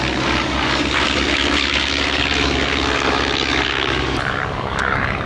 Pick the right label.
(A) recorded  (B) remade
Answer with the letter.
B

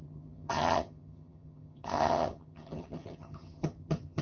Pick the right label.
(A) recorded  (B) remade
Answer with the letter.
B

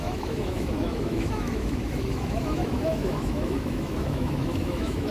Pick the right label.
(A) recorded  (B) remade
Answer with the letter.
B